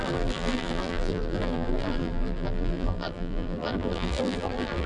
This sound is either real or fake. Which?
fake